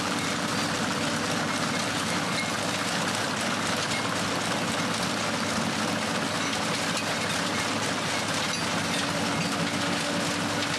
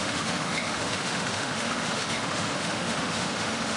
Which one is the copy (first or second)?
second